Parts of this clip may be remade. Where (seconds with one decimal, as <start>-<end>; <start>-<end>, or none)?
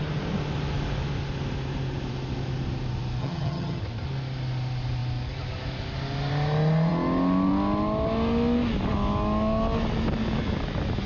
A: 3.2-3.8